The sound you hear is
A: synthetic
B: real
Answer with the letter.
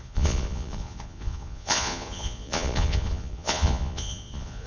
A